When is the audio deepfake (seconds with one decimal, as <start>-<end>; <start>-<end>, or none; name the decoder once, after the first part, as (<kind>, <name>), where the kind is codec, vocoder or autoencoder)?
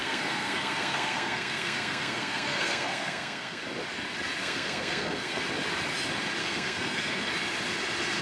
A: 0.0-3.6 (codec, SNAC); 4.4-5.4; 6.4-7.3